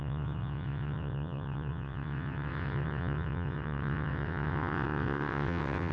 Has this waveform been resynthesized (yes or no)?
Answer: yes